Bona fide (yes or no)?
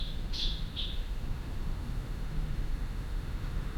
no